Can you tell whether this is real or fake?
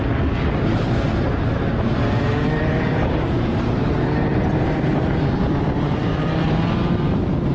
fake